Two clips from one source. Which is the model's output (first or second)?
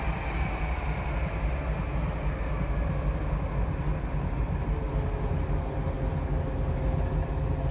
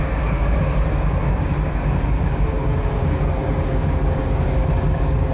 second